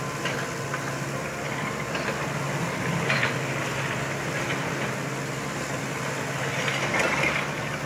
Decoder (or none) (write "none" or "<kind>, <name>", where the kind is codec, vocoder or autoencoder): none